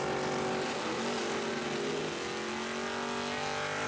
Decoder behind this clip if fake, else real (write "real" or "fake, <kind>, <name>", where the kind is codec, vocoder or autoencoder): real